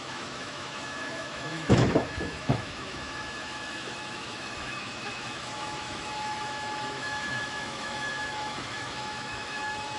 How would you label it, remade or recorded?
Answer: remade